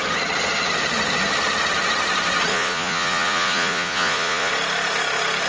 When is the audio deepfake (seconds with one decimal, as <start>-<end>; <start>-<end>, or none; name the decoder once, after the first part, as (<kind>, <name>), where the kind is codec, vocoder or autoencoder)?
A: 2.5-4.5 (vocoder, Vocos)